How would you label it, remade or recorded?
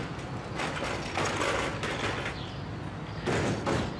recorded